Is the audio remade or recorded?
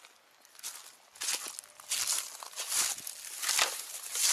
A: recorded